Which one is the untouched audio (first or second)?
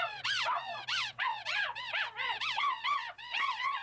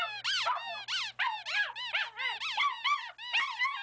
second